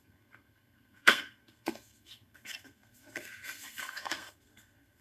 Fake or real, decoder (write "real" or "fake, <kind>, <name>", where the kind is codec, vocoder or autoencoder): fake, codec, SNAC